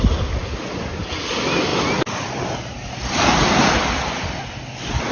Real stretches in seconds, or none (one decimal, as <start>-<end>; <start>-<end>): 0.0-5.1